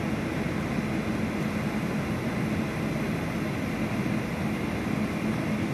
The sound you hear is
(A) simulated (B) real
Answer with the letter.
B